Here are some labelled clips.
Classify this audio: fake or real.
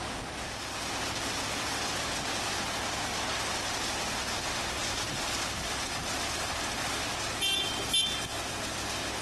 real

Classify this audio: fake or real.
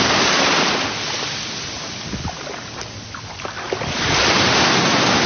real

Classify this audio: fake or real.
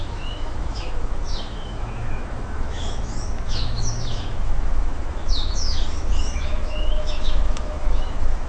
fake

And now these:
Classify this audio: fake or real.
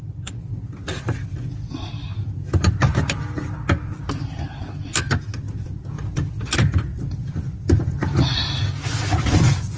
real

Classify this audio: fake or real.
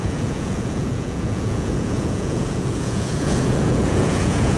fake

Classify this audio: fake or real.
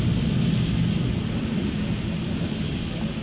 real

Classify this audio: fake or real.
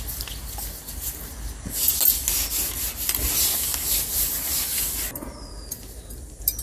real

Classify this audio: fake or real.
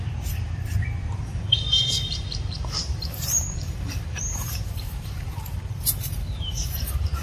fake